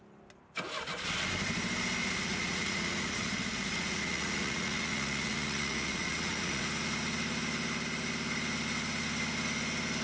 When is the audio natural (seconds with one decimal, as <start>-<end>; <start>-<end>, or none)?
0.0-2.0; 6.6-10.0